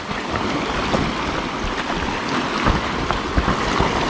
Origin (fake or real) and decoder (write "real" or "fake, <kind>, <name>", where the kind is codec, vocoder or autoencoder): real